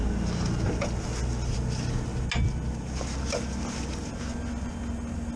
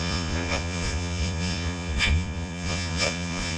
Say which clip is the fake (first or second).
second